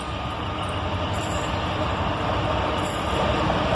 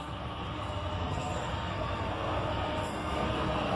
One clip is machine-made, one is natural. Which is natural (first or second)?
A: first